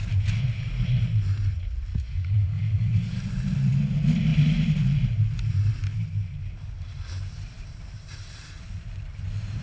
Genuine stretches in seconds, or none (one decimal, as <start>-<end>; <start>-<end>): 0.0-1.9; 3.2-9.6